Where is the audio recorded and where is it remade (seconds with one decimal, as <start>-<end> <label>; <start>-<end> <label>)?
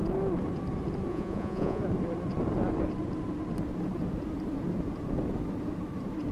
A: 0.0-1.1 recorded; 1.1-1.8 remade; 1.8-6.3 recorded